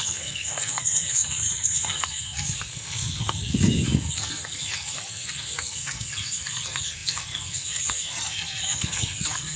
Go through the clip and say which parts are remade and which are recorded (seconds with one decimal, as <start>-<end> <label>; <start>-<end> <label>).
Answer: 0.0-9.6 remade